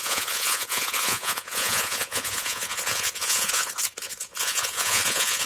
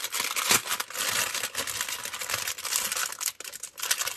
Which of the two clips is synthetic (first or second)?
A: first